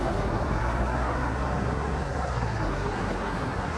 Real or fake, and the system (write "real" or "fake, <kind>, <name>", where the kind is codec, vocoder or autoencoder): fake, codec, SNAC